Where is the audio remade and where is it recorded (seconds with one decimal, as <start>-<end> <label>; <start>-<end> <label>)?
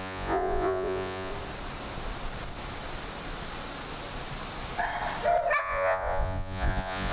0.0-1.3 remade; 1.3-5.6 recorded; 5.6-7.1 remade